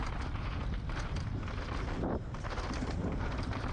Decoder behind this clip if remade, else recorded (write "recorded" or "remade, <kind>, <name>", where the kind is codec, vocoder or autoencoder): recorded